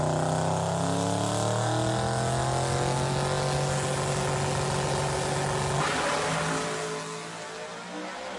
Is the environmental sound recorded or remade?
recorded